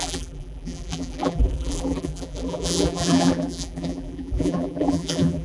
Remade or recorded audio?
remade